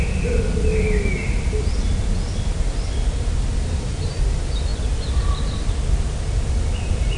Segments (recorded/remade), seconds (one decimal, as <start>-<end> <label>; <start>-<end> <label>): 0.0-7.2 recorded